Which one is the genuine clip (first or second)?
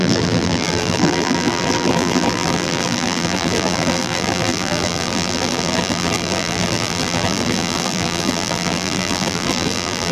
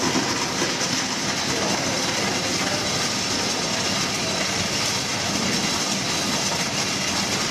second